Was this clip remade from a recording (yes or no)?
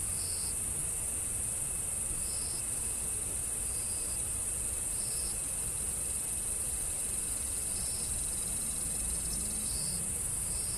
no